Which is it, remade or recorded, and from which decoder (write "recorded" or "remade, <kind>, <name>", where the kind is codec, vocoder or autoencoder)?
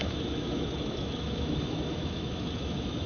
remade, autoencoder, DAC-VAE